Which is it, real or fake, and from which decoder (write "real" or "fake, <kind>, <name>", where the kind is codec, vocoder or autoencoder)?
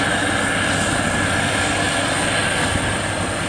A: real